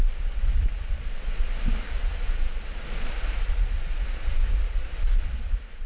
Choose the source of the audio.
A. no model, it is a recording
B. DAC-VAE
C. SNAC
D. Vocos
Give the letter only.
A